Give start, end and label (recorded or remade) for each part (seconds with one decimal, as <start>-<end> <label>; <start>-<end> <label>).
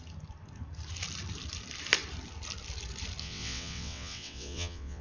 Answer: 0.0-3.2 recorded; 3.2-5.0 remade